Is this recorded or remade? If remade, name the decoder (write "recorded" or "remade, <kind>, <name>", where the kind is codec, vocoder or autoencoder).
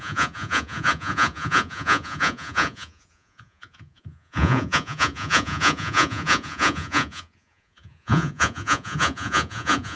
remade, vocoder, Vocos